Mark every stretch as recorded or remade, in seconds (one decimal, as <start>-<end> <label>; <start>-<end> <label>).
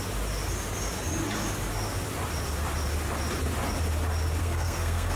0.0-4.4 recorded; 4.4-5.2 remade